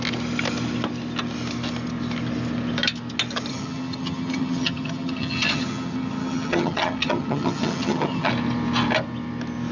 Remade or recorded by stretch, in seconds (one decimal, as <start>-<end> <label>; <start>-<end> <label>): 0.0-3.5 recorded; 3.5-8.3 remade; 8.3-9.7 recorded